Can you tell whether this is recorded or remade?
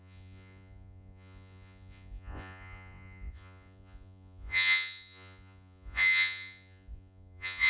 remade